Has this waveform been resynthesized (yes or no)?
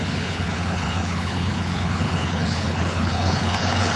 yes